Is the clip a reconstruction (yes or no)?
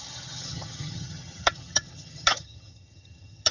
yes